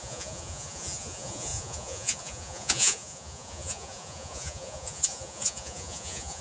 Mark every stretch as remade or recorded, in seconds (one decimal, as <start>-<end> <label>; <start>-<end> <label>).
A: 0.0-6.4 remade